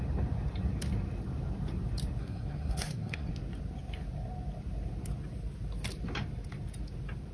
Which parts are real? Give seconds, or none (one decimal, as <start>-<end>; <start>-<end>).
0.0-2.2; 3.3-7.3